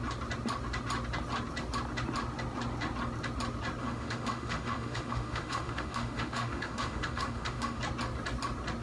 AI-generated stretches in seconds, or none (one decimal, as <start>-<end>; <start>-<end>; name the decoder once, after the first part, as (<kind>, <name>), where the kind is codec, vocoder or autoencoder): 3.8-7.8 (autoencoder, DAC-VAE)